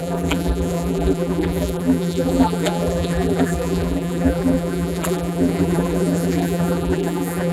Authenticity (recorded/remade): remade